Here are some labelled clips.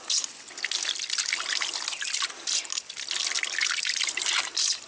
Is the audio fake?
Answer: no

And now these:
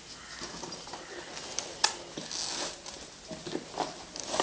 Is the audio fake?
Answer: no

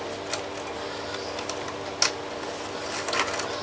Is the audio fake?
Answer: no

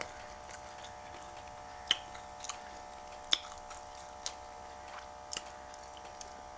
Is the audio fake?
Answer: no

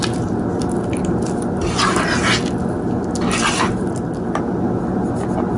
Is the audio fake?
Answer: no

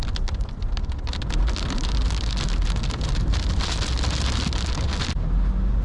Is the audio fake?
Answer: no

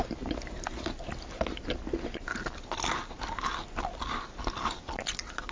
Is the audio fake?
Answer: no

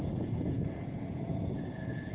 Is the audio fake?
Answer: yes